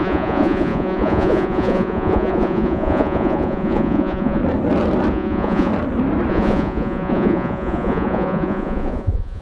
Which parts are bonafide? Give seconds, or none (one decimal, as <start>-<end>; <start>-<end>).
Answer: 4.4-5.1; 5.7-6.3